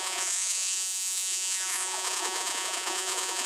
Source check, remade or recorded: remade